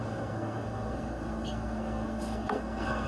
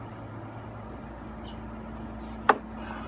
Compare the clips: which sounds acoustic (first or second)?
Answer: second